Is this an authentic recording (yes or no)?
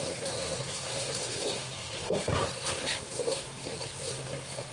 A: no